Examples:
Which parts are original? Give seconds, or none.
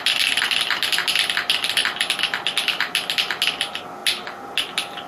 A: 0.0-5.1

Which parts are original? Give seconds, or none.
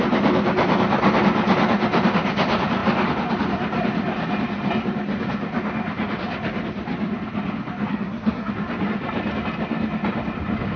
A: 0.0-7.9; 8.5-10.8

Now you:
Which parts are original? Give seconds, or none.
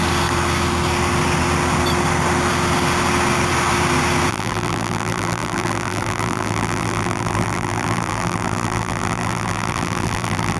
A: 0.0-4.3